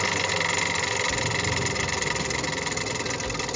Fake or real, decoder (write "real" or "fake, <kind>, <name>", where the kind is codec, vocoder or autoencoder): real